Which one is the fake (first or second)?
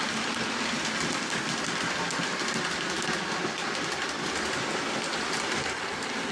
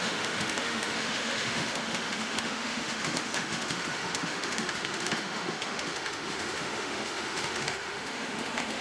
second